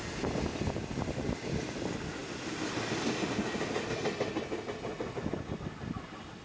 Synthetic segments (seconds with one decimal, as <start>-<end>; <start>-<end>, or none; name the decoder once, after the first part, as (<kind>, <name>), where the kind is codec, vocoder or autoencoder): none